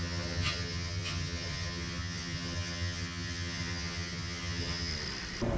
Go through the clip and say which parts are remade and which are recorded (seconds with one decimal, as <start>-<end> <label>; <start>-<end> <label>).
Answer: 0.0-4.9 remade; 4.9-5.6 recorded